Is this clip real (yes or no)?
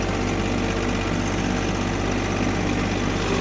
yes